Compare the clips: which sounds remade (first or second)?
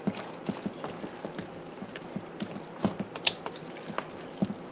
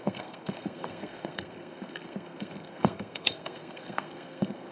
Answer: second